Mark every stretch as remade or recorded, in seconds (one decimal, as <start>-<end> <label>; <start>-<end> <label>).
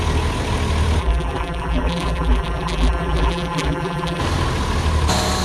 0.0-1.0 recorded; 1.0-4.2 remade; 4.2-5.4 recorded